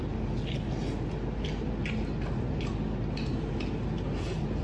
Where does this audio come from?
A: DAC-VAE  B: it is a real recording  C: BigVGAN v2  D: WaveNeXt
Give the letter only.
B